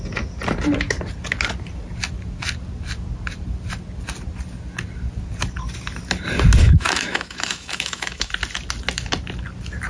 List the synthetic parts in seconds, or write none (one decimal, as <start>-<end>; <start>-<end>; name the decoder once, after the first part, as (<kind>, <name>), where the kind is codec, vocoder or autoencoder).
6.6-8.3 (autoencoder, DAC-VAE)

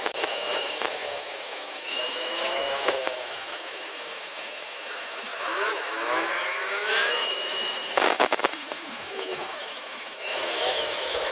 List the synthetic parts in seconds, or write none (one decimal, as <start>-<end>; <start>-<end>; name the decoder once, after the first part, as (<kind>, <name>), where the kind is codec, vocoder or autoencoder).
0.0-11.3 (autoencoder, DAC-VAE)

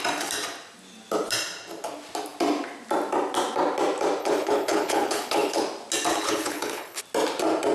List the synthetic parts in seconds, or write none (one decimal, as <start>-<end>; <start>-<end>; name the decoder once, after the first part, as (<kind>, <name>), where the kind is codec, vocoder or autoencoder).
4.2-5.6 (codec, HILCodec); 6.1-7.0

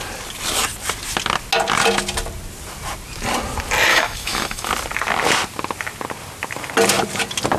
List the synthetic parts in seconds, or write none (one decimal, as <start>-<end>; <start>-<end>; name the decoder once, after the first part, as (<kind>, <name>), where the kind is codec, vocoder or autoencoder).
3.9-4.7 (autoencoder, DAC-VAE)

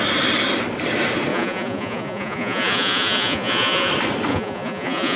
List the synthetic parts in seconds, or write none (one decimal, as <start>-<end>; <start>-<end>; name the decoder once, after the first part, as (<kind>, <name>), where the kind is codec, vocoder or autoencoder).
1.3-3.9 (vocoder, Vocos); 4.3-5.2

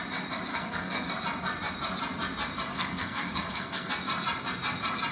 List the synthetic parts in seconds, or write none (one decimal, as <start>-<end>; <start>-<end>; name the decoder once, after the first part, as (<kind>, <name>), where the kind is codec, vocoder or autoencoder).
0.5-1.1 (codec, SNAC); 2.7-3.9

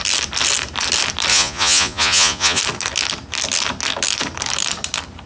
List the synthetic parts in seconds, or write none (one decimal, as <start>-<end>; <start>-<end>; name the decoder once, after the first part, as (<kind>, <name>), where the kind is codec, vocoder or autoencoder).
1.3-2.6 (vocoder, Vocos)